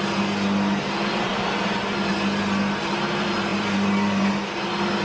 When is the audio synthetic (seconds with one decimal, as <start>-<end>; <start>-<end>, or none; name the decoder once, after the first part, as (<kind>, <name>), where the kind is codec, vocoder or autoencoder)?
3.5-4.2 (vocoder, BigVGAN v2)